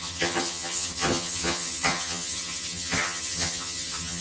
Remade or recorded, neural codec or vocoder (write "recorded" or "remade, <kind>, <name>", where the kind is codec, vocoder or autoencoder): remade, vocoder, HiFi-GAN